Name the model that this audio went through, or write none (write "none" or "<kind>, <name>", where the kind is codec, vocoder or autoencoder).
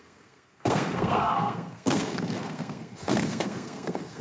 codec, SNAC